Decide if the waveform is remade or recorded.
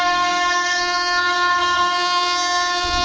remade